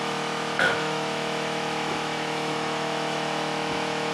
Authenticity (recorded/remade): remade